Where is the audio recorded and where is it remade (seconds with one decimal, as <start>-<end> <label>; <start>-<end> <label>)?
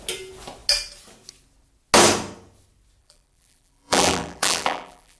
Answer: 0.0-3.0 recorded; 3.0-5.2 remade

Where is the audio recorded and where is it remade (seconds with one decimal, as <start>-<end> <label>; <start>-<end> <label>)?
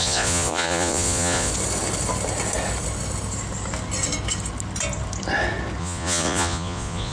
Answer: 0.0-1.5 remade; 1.5-5.8 recorded; 5.8-7.1 remade